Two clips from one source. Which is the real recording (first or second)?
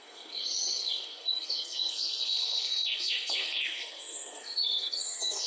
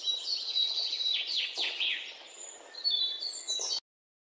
second